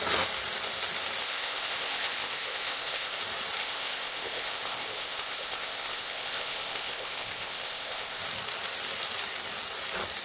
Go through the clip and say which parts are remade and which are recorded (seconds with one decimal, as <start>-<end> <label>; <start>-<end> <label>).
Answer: 0.0-1.2 recorded; 1.2-3.2 remade; 3.2-3.6 recorded; 3.6-8.2 remade; 8.2-10.2 recorded